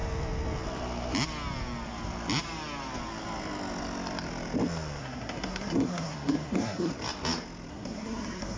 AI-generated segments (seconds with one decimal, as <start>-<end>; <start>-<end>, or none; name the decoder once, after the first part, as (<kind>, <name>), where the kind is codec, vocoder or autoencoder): 5.0-6.9 (codec, SNAC); 7.7-8.6